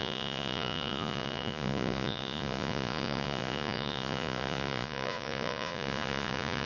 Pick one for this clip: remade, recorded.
remade